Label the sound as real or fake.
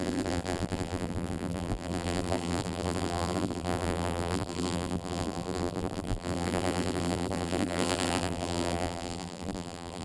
fake